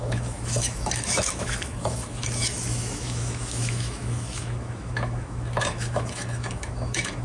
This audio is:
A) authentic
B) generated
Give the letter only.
B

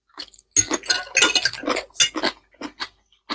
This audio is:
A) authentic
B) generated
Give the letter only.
A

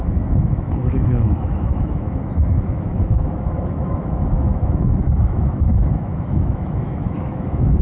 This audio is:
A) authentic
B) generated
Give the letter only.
B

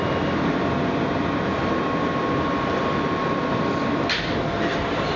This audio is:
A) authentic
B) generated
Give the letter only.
A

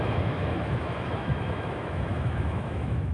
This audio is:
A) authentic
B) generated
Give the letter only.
B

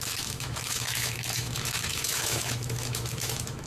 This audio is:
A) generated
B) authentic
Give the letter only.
A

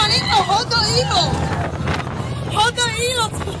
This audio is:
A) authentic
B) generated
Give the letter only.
A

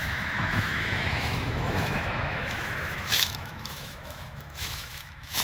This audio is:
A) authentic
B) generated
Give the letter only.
B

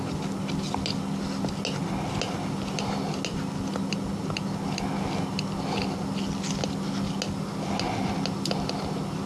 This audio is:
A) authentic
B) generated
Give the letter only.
A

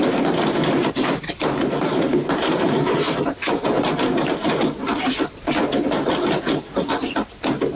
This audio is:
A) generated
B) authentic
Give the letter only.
B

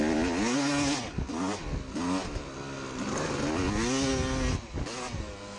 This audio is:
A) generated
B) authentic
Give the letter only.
B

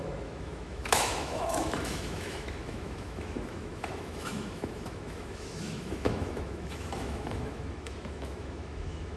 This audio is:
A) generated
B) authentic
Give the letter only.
A